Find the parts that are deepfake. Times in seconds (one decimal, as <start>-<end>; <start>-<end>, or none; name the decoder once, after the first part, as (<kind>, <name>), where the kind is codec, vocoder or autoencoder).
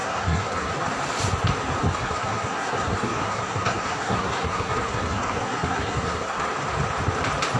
0.0-0.7 (codec, SNAC); 1.8-6.4